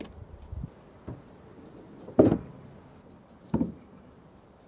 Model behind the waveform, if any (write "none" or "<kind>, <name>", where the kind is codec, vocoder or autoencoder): none